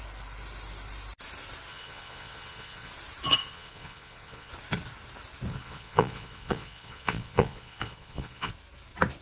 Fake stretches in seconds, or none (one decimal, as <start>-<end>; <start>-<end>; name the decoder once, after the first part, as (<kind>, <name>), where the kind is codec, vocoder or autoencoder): 1.7-2.9 (vocoder, Vocos); 3.4-4.5; 5.5-8.5